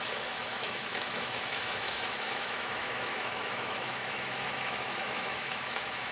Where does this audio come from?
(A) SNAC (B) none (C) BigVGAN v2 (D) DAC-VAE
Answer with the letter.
D